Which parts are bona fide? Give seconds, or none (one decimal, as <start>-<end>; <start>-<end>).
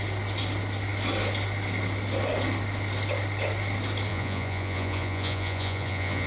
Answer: 0.0-4.1